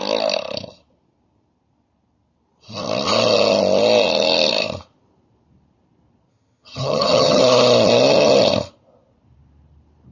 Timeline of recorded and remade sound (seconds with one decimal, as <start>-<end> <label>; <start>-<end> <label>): 0.0-6.3 recorded; 6.3-7.4 remade; 7.4-10.1 recorded